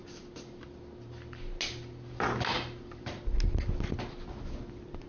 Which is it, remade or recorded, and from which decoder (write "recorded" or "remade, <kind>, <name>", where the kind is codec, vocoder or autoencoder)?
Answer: recorded